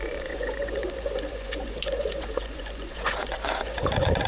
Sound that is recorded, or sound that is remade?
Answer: remade